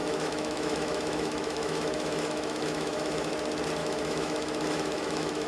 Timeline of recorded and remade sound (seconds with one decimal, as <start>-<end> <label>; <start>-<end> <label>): 0.0-3.3 remade; 3.3-3.8 recorded; 3.8-5.5 remade